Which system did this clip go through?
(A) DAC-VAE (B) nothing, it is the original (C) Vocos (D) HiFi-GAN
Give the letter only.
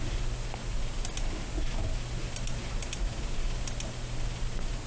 B